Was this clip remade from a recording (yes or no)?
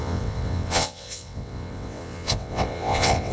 yes